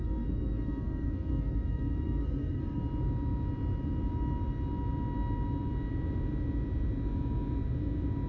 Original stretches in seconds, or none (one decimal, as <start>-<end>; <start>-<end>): 2.8-8.3